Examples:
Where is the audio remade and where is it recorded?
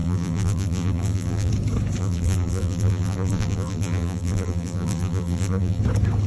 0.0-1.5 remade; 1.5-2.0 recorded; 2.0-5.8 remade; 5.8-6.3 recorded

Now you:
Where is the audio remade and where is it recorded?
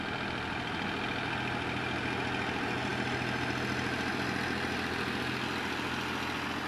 0.0-6.7 recorded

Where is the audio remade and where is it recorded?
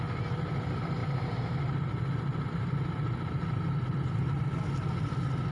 0.0-1.0 recorded; 1.0-4.3 remade; 4.3-5.5 recorded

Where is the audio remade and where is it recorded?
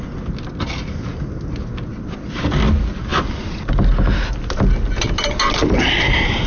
0.0-6.5 recorded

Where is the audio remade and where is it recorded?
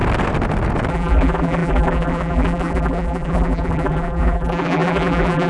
0.0-0.9 recorded; 0.9-5.5 remade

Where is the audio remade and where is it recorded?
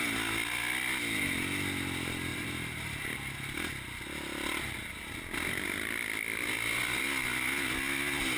0.0-2.3 recorded; 2.3-3.0 remade; 3.0-8.4 recorded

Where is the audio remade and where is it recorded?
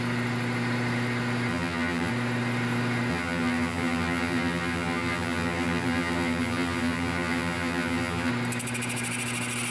0.0-1.5 recorded; 1.5-2.1 remade; 2.1-3.1 recorded; 3.1-8.3 remade; 8.3-9.7 recorded